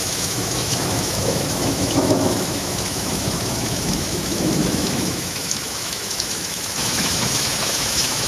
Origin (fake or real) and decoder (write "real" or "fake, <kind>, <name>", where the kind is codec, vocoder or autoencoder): fake, autoencoder, DAC-VAE